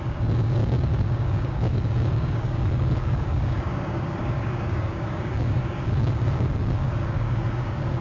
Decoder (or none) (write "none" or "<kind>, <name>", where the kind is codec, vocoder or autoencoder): codec, DAC